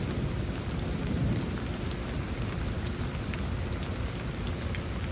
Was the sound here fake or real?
real